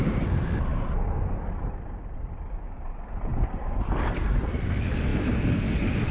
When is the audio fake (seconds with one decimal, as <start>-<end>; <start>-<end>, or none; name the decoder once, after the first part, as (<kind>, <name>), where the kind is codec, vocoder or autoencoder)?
3.3-4.6 (vocoder, BigVGAN v2)